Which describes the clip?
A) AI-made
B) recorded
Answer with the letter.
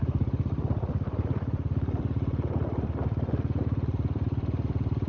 A